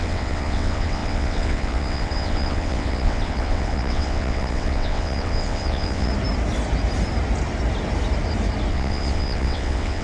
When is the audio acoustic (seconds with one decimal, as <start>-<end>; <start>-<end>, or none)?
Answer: 6.1-8.7